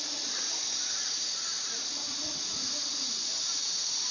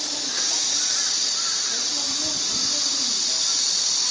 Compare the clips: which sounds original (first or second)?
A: second